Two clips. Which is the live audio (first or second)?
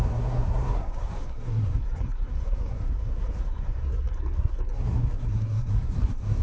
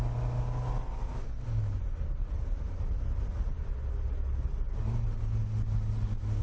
second